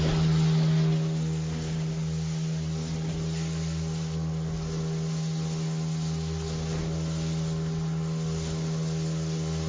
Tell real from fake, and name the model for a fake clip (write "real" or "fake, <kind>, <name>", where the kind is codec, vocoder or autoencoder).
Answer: real